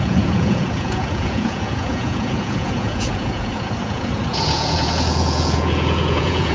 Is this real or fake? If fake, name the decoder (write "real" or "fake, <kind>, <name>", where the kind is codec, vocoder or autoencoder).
fake, vocoder, Vocos